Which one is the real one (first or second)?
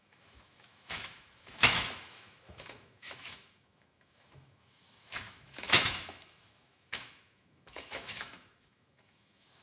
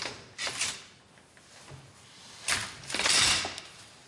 second